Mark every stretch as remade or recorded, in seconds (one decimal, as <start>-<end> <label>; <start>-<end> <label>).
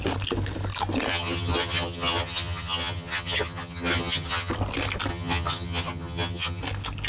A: 0.0-1.1 recorded; 1.1-4.5 remade; 4.5-5.1 recorded; 5.1-6.6 remade; 6.6-7.1 recorded